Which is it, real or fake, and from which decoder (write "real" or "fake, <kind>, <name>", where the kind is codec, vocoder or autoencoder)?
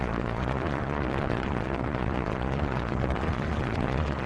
fake, vocoder, Vocos